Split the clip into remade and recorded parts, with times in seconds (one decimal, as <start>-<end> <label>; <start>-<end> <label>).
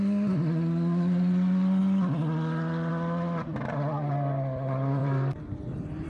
0.0-5.0 recorded; 5.0-6.1 remade